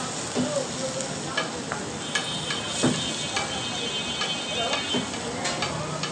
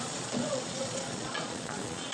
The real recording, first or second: first